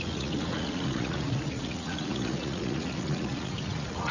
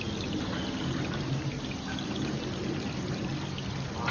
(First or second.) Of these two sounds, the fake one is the first